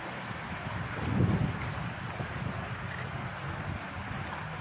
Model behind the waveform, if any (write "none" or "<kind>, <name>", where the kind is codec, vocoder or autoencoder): none